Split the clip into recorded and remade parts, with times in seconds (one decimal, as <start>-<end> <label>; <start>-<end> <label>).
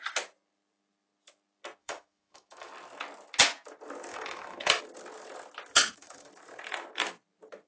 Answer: 0.0-1.8 recorded; 1.8-2.7 remade; 2.7-4.1 recorded; 4.1-4.8 remade; 4.8-5.7 recorded; 5.7-6.3 remade; 6.3-7.7 recorded